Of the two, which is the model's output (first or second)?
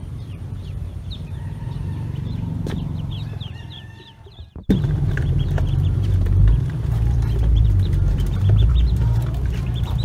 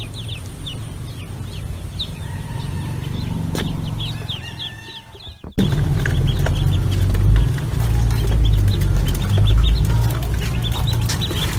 first